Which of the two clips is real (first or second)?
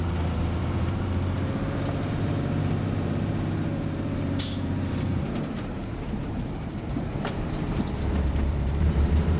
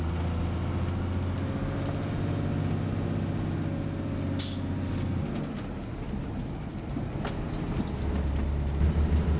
second